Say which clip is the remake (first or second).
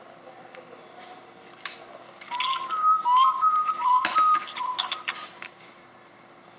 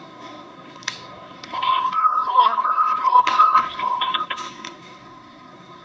second